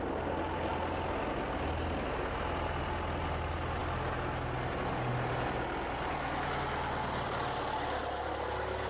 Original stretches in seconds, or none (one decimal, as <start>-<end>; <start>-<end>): 0.0-8.9